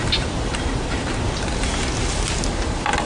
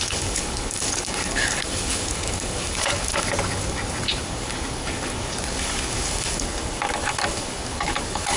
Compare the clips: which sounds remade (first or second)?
second